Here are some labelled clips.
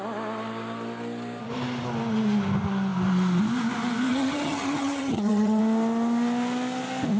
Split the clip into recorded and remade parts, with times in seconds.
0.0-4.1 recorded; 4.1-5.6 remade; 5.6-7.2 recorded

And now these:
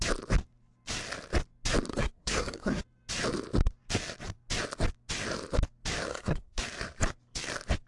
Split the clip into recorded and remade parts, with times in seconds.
0.0-1.9 recorded; 1.9-2.8 remade; 2.8-6.1 recorded; 6.1-6.6 remade; 6.6-7.9 recorded

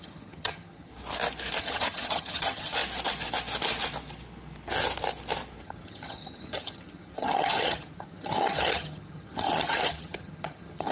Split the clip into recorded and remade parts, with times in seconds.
0.0-0.9 remade; 0.9-1.6 recorded; 1.6-2.8 remade; 2.8-5.6 recorded; 5.6-10.9 remade